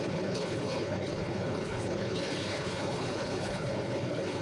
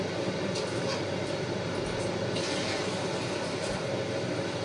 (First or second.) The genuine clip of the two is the second